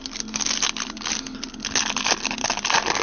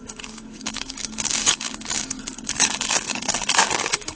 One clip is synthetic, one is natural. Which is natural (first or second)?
first